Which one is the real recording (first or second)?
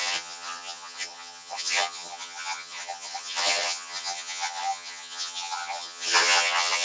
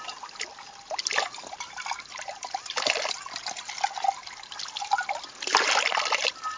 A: second